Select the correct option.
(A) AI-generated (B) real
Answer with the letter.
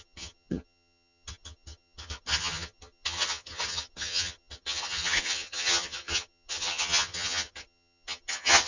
A